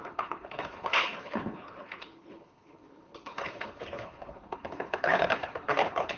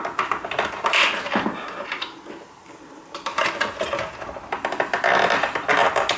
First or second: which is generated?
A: first